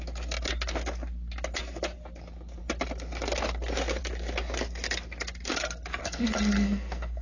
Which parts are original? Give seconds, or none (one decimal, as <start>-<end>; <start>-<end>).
0.0-6.0